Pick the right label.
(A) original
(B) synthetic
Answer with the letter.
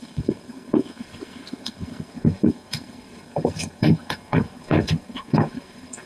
B